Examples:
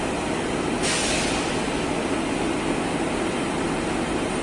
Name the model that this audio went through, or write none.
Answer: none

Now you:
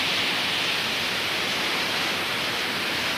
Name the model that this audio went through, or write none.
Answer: none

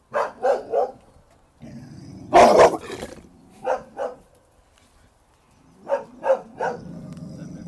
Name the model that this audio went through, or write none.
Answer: none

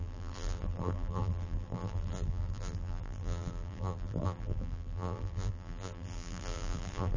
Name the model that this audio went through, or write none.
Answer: vocoder, BigVGAN v2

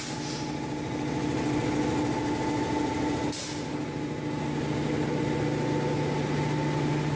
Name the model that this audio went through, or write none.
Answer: none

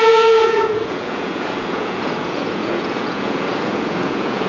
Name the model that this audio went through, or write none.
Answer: vocoder, Vocos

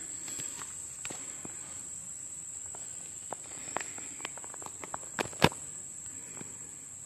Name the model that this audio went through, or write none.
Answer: vocoder, BigVGAN v2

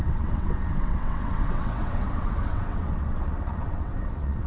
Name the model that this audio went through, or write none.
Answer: vocoder, WaveNeXt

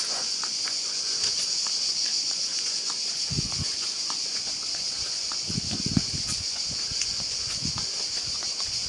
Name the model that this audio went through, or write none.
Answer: vocoder, Vocos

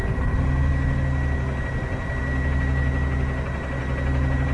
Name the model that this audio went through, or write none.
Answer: none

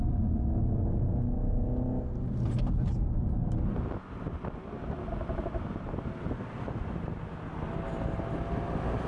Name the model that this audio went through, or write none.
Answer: none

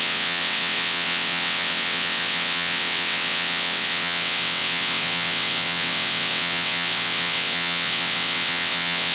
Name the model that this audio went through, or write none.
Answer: vocoder, WaveNeXt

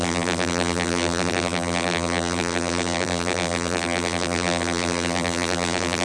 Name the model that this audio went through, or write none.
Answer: vocoder, BigVGAN v2